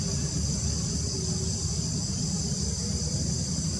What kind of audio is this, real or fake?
real